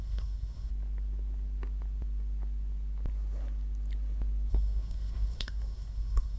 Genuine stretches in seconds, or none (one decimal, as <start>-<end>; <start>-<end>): 0.7-4.5